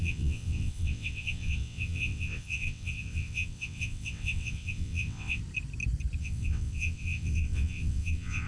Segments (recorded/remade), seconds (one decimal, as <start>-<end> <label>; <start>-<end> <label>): 0.0-5.4 remade; 5.4-6.2 recorded; 6.2-8.5 remade